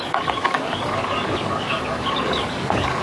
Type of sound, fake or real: fake